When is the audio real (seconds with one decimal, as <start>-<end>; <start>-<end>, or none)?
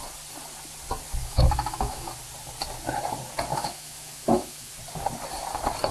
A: 0.0-1.2; 2.1-3.5; 4.7-5.9